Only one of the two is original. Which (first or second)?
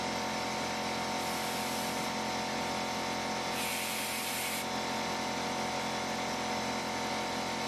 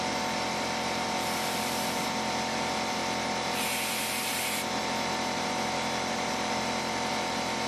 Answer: first